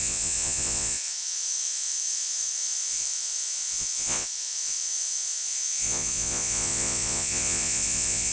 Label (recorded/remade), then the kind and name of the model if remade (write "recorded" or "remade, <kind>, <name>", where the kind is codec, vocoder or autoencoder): remade, vocoder, Vocos